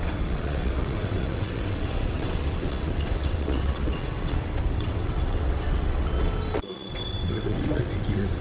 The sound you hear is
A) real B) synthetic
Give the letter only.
B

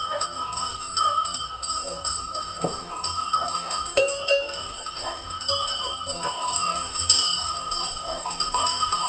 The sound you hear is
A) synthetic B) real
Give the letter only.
A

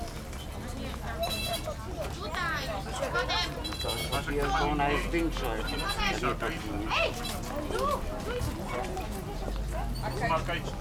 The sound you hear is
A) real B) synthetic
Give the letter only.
A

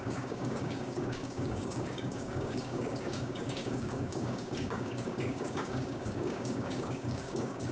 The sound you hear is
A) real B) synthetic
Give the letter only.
B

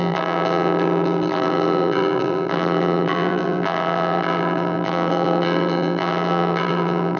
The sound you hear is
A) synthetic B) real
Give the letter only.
A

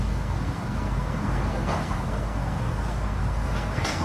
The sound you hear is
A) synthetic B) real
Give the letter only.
A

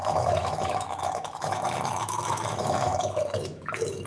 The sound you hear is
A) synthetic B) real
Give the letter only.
A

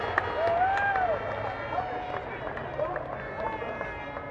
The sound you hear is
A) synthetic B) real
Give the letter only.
B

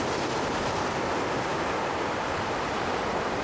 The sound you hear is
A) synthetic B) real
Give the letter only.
B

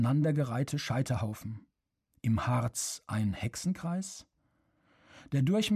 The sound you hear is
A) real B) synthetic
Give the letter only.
A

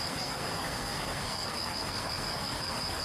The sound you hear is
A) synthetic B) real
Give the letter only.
A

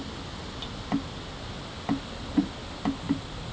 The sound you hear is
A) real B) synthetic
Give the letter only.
A